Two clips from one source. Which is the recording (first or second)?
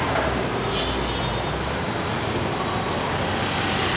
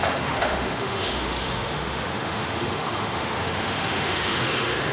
first